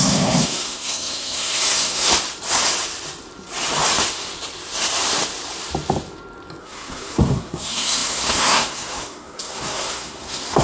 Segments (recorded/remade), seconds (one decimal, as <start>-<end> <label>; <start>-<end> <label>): 0.0-2.1 remade; 2.1-6.6 recorded; 6.6-10.6 remade